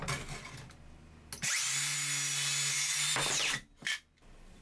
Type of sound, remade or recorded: recorded